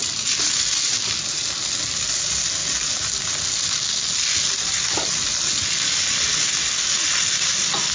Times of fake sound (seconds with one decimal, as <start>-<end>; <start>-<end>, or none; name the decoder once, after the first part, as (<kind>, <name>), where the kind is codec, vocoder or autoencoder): none